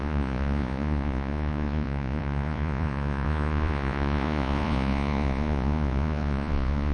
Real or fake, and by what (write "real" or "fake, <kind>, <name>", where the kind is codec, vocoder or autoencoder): fake, vocoder, Vocos